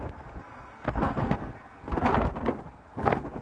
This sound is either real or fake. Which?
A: fake